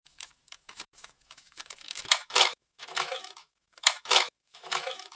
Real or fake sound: fake